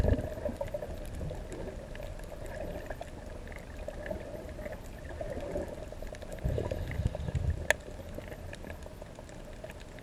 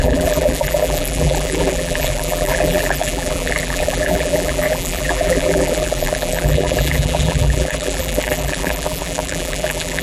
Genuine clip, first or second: first